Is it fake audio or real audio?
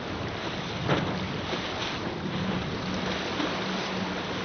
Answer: real